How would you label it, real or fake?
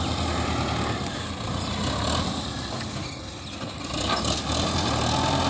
real